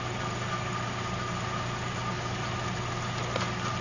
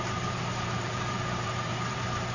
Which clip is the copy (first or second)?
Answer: second